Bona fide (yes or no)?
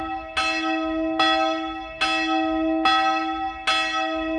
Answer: yes